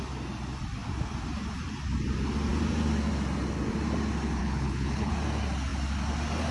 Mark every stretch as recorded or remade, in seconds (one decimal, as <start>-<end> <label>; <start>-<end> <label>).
0.0-4.4 recorded; 4.4-5.1 remade; 5.1-6.5 recorded